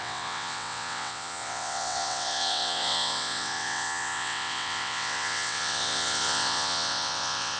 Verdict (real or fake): fake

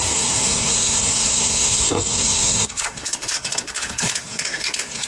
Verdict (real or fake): fake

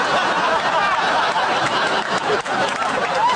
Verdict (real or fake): real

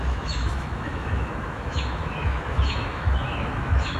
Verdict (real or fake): fake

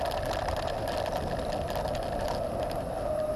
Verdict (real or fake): real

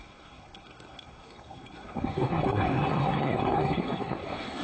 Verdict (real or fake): fake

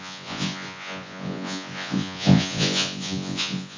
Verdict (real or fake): fake